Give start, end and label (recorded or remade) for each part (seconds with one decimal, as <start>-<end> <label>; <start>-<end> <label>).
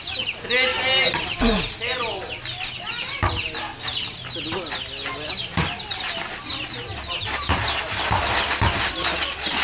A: 0.0-9.6 recorded